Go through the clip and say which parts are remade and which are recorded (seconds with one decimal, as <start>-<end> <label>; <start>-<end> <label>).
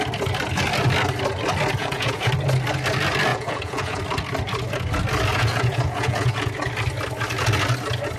0.0-1.8 recorded; 1.8-2.3 remade; 2.3-3.3 recorded; 3.3-4.0 remade; 4.0-5.3 recorded; 5.3-6.5 remade; 6.5-8.2 recorded